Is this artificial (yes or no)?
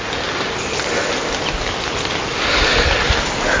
no